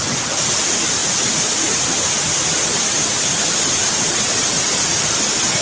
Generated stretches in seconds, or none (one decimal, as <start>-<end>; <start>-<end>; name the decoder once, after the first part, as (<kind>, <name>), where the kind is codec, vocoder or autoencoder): none